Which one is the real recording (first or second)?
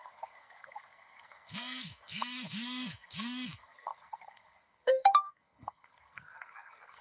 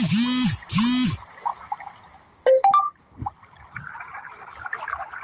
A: second